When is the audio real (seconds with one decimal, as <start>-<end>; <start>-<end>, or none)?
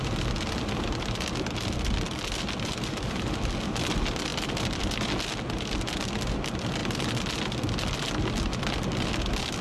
0.0-9.6